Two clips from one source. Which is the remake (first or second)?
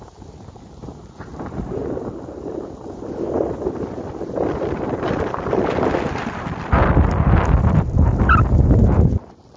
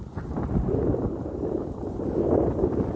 first